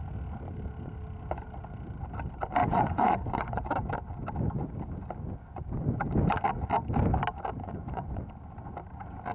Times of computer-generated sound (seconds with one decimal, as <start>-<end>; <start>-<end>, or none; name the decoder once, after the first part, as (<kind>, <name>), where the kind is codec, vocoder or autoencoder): 2.6-3.6 (vocoder, Vocos); 7.6-8.2